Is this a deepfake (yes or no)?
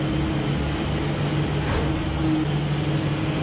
no